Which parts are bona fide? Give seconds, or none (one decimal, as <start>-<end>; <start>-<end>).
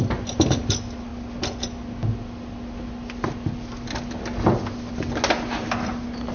0.0-6.3